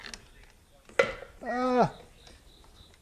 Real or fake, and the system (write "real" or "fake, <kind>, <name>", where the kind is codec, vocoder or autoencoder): real